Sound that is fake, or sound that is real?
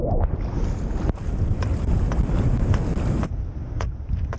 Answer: real